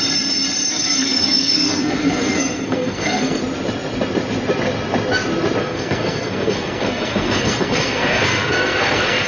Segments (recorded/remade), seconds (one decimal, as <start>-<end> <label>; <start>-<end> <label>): 0.0-0.7 recorded; 0.7-3.4 remade; 3.4-5.6 recorded; 5.6-9.3 remade